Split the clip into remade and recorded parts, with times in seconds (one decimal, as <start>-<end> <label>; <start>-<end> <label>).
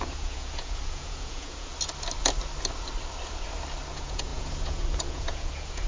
0.0-1.7 remade; 1.7-3.9 recorded; 3.9-5.9 remade